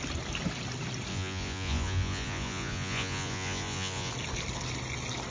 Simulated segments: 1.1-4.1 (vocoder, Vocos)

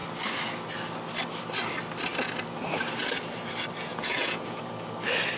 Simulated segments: 3.9-4.6 (vocoder, Vocos)